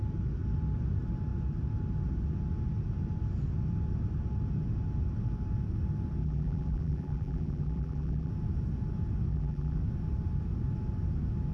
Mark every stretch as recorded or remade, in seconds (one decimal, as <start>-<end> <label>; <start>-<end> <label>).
0.0-6.2 recorded; 6.2-8.3 remade; 8.3-9.3 recorded; 9.3-9.8 remade; 9.8-11.5 recorded